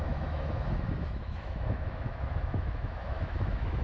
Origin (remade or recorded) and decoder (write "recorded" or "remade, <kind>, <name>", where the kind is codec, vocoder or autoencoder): remade, autoencoder, DAC-VAE